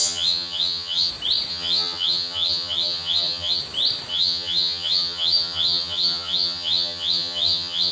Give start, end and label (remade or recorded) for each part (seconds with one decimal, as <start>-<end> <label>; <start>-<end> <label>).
0.0-1.1 remade; 1.1-1.5 recorded; 1.5-3.6 remade; 3.6-4.1 recorded; 4.1-7.9 remade